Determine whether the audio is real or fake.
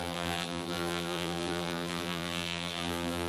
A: fake